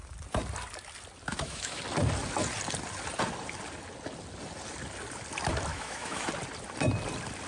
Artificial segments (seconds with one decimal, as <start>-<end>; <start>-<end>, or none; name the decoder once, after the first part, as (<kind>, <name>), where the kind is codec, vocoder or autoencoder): 1.3-1.8 (autoencoder, DAC-VAE); 5.7-6.3